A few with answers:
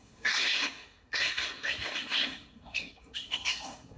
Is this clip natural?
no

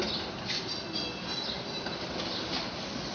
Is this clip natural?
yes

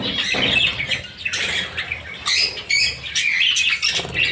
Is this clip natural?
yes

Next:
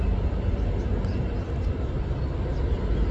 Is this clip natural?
yes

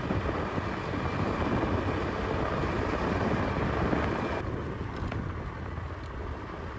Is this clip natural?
yes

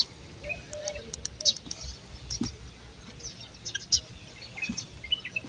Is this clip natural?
yes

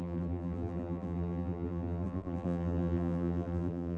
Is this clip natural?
no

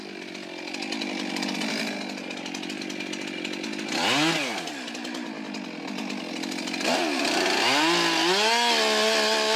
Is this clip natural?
yes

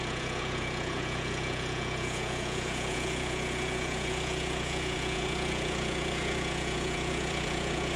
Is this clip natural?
no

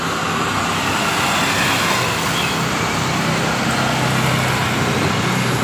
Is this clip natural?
yes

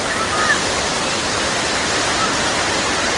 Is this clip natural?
yes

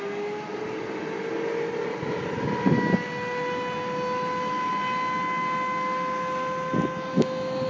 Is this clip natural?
yes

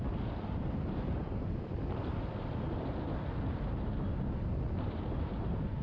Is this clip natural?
yes